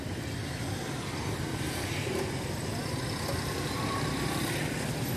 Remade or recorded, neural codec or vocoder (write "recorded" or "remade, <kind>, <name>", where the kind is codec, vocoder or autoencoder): remade, vocoder, BigVGAN v2